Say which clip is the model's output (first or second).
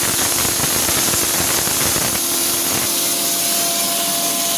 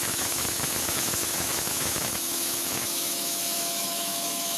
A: second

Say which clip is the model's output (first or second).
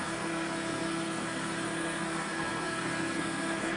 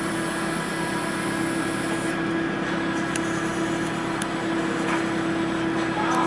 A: first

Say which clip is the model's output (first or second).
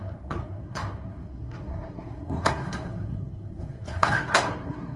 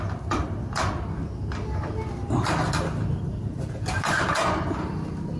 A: first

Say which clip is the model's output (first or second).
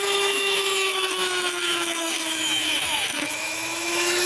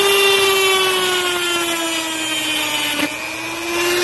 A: first